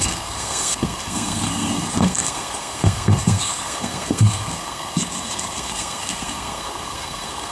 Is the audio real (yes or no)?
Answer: no